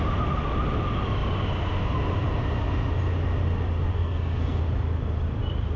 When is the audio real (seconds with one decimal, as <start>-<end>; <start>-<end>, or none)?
0.0-3.9; 4.6-5.8